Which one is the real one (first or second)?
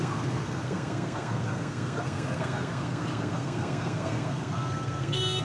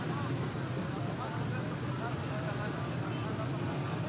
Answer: second